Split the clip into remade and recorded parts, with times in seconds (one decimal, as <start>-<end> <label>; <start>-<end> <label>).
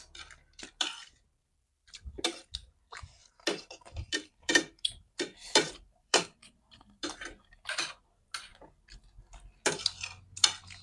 0.0-3.2 recorded; 3.2-6.2 remade; 6.2-10.8 recorded